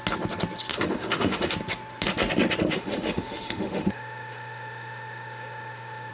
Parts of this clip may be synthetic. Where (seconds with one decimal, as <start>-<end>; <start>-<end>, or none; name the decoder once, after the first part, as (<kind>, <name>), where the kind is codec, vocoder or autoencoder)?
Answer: 0.7-1.5 (autoencoder, DAC-VAE); 2.6-6.1